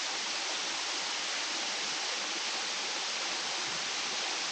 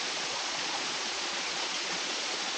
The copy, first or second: second